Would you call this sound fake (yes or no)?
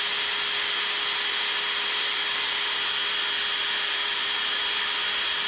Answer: no